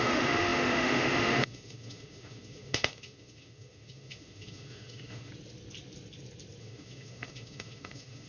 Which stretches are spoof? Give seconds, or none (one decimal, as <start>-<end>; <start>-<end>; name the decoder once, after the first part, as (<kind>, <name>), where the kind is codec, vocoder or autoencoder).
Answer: 0.0-5.3 (autoencoder, DAC-VAE); 6.6-8.3